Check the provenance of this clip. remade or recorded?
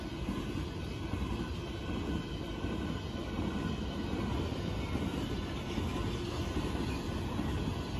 recorded